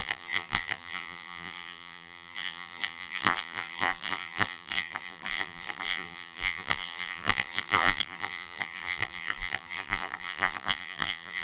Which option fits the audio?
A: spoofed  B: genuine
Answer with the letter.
A